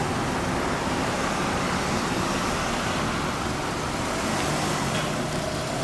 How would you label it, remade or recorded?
recorded